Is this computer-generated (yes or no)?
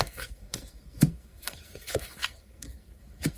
yes